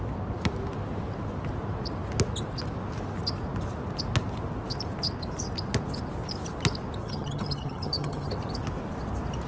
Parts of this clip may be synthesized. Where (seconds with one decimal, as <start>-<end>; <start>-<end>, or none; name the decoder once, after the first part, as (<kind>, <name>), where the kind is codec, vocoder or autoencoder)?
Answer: 7.0-8.3 (vocoder, HiFi-GAN)